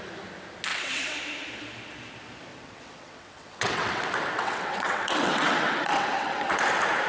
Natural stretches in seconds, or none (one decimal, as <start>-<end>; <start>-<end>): 0.0-0.7; 1.2-2.5; 6.6-7.1